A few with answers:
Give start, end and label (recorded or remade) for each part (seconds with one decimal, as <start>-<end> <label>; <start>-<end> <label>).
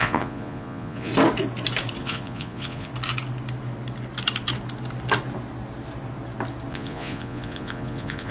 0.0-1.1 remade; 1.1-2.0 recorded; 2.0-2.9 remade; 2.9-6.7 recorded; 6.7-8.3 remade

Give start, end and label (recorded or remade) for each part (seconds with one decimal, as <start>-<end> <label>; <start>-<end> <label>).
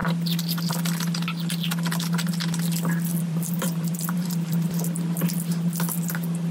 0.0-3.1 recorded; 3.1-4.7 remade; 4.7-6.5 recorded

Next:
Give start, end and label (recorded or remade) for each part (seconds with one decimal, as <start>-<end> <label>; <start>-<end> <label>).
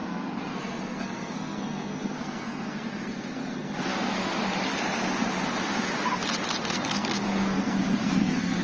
0.0-4.4 remade; 4.4-6.7 recorded; 6.7-8.6 remade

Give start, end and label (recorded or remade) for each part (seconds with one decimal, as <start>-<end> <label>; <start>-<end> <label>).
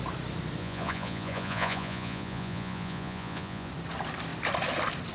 0.0-0.6 recorded; 0.6-3.7 remade; 3.7-5.1 recorded